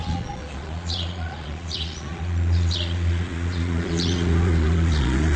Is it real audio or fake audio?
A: fake